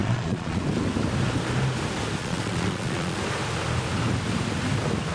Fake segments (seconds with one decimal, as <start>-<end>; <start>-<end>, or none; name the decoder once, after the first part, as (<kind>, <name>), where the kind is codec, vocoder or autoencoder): 0.0-0.6 (vocoder, Vocos); 2.2-3.2